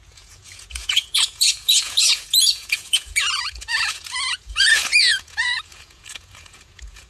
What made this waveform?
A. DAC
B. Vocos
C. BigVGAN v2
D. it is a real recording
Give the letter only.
B